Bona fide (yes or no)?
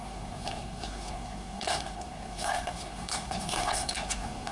no